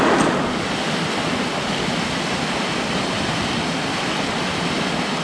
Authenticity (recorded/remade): recorded